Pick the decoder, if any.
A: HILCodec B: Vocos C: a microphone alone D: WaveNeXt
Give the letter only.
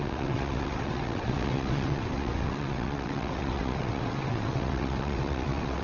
D